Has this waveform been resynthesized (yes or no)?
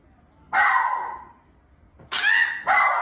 no